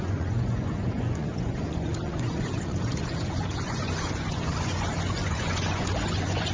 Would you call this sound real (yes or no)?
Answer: no